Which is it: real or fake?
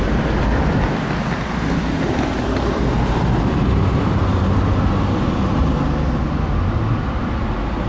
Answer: real